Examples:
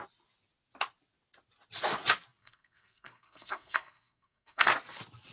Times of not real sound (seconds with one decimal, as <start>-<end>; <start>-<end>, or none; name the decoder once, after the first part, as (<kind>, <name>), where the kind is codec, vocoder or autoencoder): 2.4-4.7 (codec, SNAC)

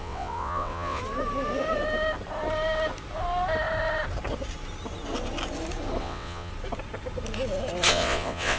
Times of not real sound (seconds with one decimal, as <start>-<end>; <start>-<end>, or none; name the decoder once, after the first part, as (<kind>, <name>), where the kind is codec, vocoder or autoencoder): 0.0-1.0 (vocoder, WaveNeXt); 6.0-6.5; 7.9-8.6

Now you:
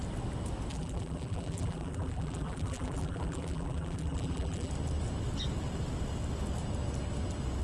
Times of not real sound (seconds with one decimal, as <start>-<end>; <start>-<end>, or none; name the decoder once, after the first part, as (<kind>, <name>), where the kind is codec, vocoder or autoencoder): 0.7-4.7 (vocoder, BigVGAN v2)